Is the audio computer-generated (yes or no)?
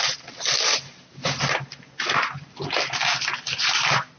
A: no